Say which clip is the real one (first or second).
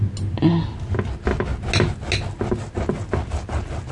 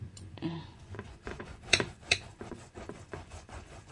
first